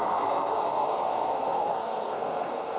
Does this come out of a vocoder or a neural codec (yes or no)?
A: yes